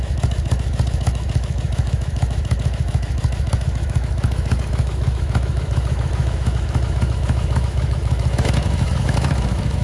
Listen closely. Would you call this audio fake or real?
fake